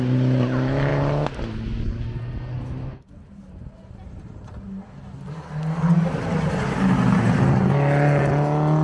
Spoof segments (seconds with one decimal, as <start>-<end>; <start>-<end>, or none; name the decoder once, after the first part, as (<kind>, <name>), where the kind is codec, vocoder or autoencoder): none